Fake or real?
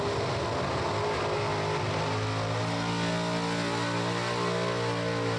real